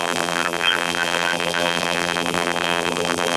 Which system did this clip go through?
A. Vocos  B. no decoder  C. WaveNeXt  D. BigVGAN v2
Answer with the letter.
D